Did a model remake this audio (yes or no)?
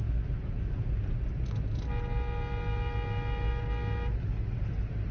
no